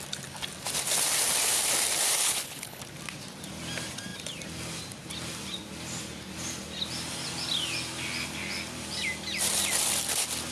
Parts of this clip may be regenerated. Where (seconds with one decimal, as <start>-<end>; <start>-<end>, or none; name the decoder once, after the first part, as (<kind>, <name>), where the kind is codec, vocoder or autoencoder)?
2.2-2.8 (codec, HILCodec)